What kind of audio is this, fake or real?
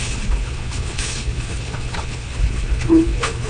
fake